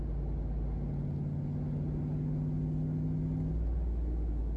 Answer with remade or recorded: recorded